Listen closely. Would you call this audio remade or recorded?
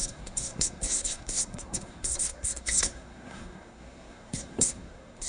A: remade